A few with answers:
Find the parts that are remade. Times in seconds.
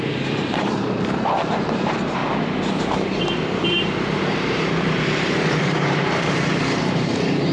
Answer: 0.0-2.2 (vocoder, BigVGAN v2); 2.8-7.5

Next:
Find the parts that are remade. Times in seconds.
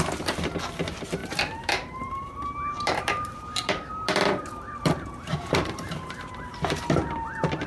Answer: 0.0-7.7 (vocoder, BigVGAN v2)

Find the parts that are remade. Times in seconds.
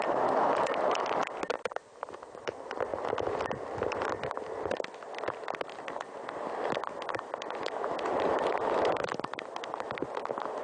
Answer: none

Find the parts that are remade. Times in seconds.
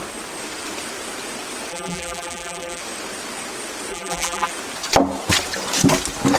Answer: 1.7-2.8 (vocoder, BigVGAN v2); 3.9-4.5